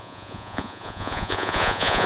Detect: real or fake fake